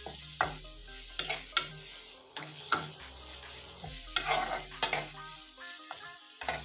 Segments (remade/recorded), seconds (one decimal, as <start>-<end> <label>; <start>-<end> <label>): 0.0-2.2 recorded; 2.2-2.9 remade; 2.9-6.6 recorded